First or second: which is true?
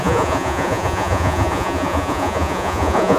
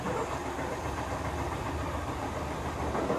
second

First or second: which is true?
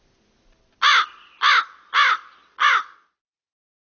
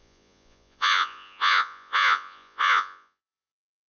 first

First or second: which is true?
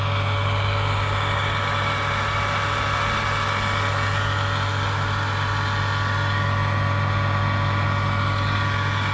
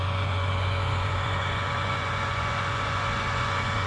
first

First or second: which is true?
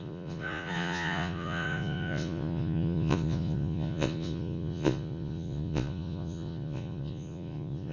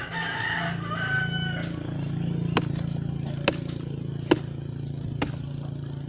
second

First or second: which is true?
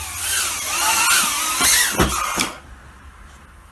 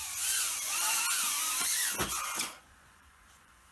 first